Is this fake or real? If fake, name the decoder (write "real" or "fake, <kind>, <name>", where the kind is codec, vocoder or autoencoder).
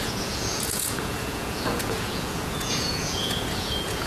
fake, vocoder, Vocos